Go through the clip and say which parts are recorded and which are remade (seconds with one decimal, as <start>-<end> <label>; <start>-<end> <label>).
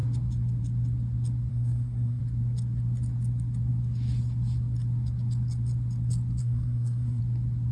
0.0-1.5 recorded; 1.5-2.2 remade; 2.2-6.4 recorded; 6.4-7.2 remade; 7.2-7.7 recorded